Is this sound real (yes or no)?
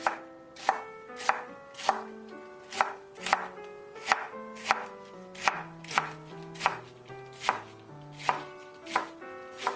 yes